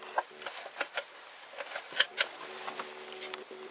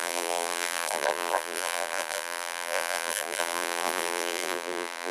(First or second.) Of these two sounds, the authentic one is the first